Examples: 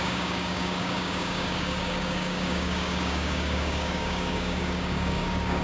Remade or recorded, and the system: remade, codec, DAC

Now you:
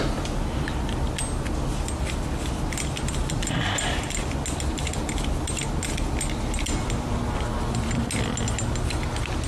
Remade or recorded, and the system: recorded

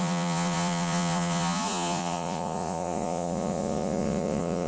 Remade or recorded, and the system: remade, vocoder, Vocos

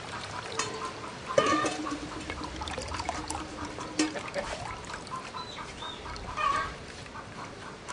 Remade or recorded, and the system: remade, vocoder, BigVGAN v2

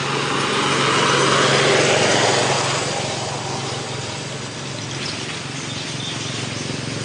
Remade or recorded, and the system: recorded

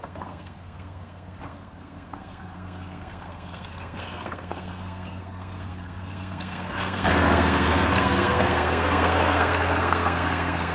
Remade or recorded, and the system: remade, codec, SNAC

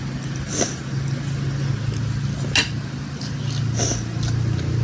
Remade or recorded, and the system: recorded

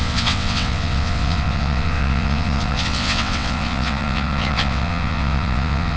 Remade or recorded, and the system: remade, vocoder, WaveNeXt